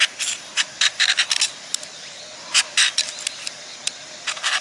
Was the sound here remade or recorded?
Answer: recorded